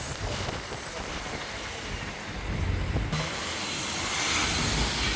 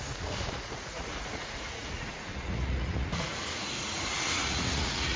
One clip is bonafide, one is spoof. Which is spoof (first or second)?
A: second